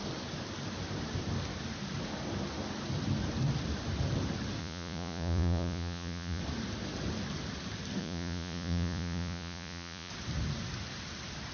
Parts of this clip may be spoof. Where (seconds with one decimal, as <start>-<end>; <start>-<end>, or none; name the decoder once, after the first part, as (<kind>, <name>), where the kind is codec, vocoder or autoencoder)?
4.6-6.4 (vocoder, Vocos); 8.0-10.1